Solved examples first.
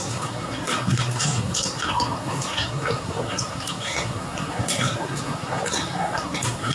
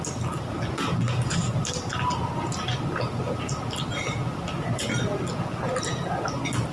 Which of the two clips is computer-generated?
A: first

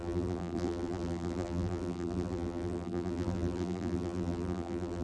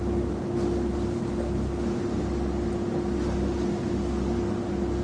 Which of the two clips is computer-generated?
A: first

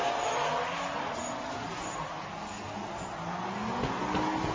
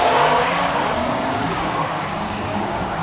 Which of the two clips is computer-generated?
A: second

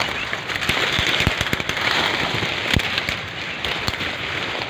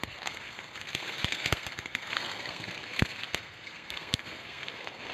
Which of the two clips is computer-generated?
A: second